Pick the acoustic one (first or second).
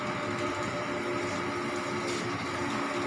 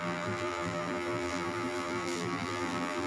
first